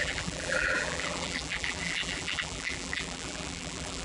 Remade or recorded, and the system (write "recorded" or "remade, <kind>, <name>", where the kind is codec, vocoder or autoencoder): remade, vocoder, BigVGAN v2